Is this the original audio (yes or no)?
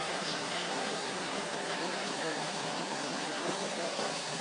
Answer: no